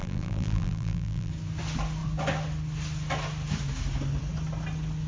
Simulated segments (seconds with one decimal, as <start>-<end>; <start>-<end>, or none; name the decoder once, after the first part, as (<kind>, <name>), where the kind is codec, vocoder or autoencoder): 0.0-1.3 (vocoder, BigVGAN v2)